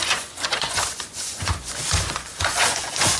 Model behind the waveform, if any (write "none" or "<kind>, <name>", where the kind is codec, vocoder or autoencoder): vocoder, Vocos